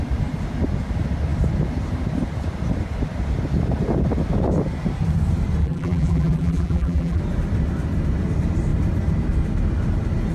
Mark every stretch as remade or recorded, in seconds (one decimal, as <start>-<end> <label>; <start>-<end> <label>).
0.0-5.6 recorded; 5.6-7.2 remade; 7.2-10.3 recorded